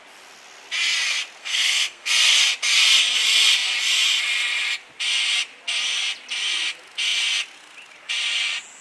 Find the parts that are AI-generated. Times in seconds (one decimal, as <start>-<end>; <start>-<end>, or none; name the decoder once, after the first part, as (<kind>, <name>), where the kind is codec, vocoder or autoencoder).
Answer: 1.4-2.1 (codec, SNAC)